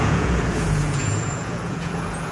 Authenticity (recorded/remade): remade